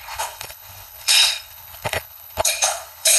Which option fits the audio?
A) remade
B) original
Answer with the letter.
A